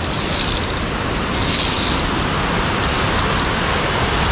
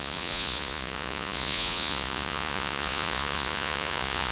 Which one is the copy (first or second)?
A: second